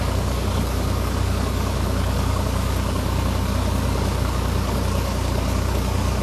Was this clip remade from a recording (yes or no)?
yes